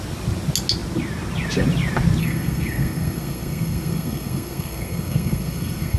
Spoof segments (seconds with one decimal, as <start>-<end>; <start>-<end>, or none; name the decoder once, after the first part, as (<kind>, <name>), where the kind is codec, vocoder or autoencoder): 2.2-6.0 (codec, SNAC)